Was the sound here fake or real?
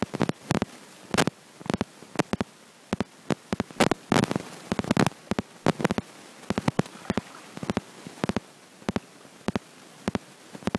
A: real